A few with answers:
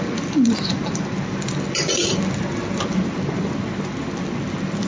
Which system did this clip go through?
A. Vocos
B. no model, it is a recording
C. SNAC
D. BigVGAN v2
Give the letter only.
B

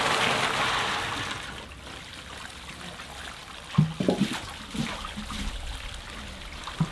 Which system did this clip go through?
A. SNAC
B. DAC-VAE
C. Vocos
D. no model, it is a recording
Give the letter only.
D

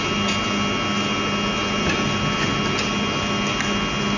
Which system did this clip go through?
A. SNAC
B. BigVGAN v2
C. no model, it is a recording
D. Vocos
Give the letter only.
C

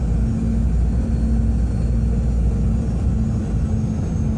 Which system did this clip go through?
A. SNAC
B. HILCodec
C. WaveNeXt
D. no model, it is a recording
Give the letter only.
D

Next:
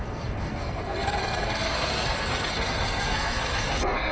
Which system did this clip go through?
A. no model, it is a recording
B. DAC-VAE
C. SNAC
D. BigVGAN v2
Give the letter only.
C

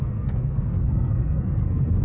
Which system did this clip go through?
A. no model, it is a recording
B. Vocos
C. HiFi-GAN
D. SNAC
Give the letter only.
D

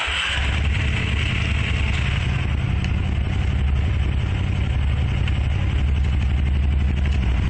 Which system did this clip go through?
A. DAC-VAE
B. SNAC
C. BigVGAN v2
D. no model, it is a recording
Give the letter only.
D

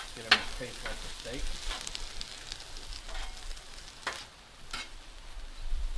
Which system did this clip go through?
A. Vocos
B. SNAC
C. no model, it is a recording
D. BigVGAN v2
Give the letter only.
C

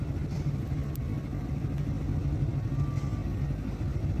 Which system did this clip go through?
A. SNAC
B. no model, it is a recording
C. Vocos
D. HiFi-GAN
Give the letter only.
B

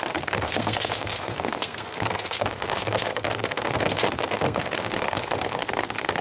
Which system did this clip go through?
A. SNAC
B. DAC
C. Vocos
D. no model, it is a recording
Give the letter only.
A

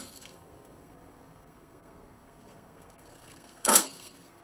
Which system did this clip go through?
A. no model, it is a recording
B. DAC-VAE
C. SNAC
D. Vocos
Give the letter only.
C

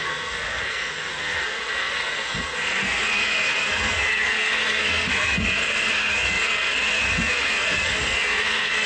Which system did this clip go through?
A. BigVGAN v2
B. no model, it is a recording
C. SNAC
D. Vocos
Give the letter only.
C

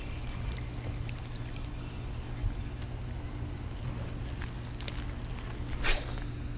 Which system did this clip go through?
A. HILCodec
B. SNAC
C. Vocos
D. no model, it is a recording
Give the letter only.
D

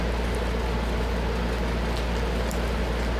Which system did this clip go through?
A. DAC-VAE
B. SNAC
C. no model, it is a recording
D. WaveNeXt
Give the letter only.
C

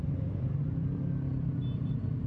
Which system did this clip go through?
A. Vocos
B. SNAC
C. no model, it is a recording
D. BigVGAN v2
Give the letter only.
C